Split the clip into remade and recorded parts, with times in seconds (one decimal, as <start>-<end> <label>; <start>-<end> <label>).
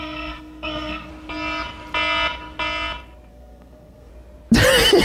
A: 0.0-1.1 remade; 1.1-3.3 recorded; 3.3-4.1 remade; 4.1-5.0 recorded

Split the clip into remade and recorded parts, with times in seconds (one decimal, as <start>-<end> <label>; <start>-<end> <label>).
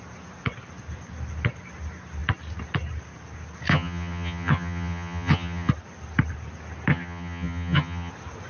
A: 0.0-3.7 recorded; 3.7-5.7 remade; 5.7-6.9 recorded; 6.9-8.1 remade; 8.1-8.5 recorded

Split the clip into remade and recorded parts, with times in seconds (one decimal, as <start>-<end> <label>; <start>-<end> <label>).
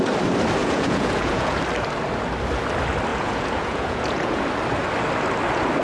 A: 0.0-0.6 recorded; 0.6-1.6 remade; 1.6-3.1 recorded; 3.1-4.4 remade; 4.4-5.8 recorded